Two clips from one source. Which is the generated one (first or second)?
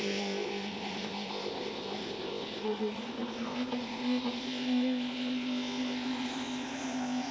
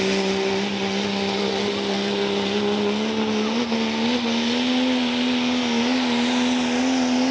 first